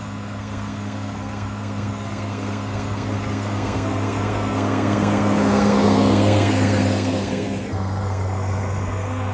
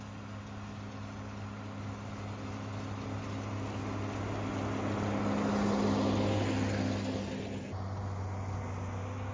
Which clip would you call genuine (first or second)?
second